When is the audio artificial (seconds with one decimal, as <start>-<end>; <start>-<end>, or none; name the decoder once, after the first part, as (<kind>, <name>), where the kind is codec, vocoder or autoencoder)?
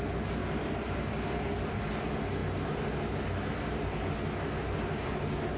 0.4-1.8 (vocoder, BigVGAN v2)